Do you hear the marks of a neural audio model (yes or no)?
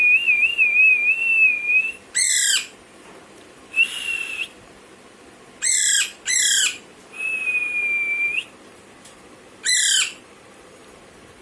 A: yes